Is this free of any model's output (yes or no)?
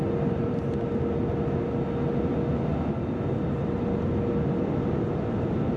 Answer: yes